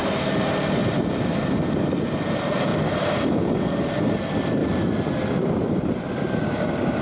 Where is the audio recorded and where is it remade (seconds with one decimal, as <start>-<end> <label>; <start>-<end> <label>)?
0.0-4.6 recorded; 4.6-7.0 remade

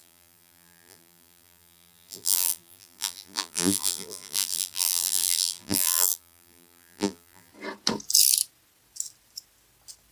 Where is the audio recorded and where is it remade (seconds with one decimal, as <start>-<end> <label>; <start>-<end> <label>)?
0.0-7.5 remade; 7.5-10.1 recorded

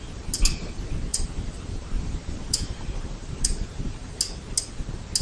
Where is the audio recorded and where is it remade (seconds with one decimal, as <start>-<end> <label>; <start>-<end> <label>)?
0.0-1.1 recorded; 1.1-4.2 remade; 4.2-5.2 recorded